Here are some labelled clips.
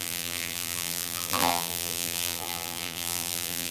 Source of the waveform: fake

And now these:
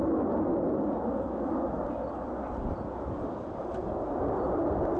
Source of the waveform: real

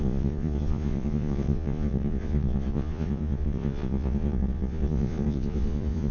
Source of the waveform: fake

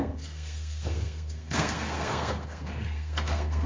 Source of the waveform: fake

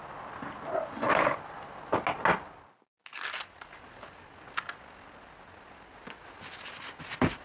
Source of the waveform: real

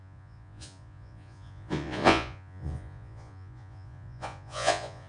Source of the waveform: fake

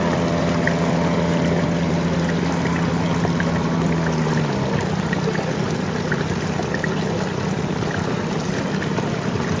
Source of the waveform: real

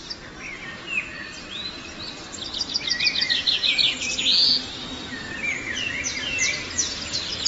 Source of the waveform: real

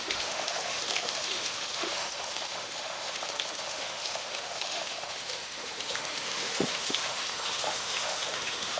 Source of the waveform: fake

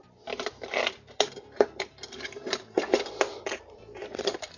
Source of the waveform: real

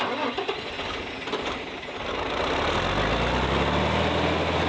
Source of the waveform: real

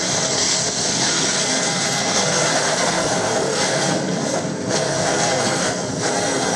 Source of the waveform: fake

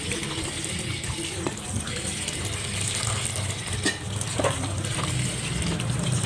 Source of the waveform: real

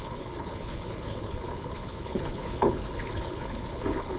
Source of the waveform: fake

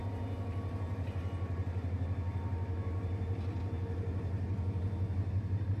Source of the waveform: real